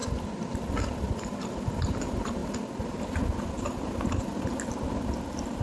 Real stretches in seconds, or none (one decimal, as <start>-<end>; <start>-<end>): 0.0-5.6